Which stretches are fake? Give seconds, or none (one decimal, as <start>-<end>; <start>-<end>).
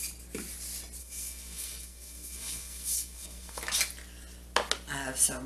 1.0-3.6